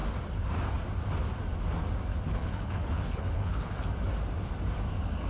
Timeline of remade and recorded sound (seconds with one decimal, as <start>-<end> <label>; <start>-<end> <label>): 0.0-2.1 recorded; 2.1-3.9 remade; 3.9-5.3 recorded